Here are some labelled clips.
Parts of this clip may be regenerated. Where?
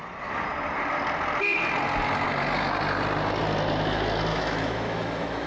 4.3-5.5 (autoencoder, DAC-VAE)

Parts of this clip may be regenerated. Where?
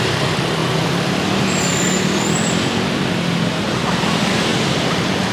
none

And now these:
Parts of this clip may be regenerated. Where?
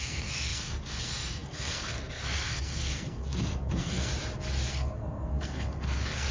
0.0-4.1 (codec, SNAC); 4.7-6.3